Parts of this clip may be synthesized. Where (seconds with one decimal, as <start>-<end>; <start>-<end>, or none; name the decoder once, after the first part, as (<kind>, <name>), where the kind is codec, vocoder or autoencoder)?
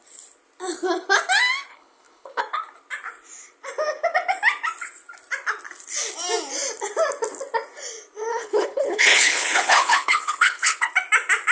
1.7-2.4 (codec, HILCodec); 8.3-10.9